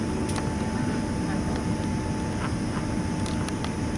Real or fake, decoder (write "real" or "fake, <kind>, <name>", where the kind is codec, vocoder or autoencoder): real